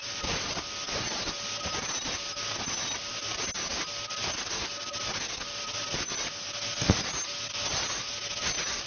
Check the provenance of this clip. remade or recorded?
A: recorded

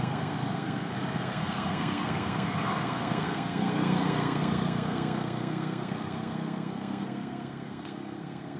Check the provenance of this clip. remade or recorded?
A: remade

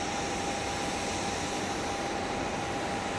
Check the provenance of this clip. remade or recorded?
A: recorded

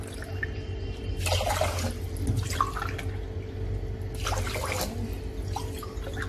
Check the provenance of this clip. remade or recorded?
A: recorded